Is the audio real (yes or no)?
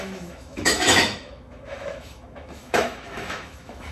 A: no